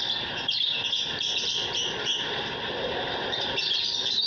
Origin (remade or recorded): recorded